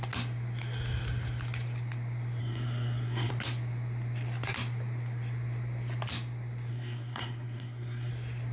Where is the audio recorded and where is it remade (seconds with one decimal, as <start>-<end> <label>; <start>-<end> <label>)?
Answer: 0.0-2.4 recorded; 2.4-3.3 remade; 3.3-6.7 recorded; 6.7-8.1 remade; 8.1-8.5 recorded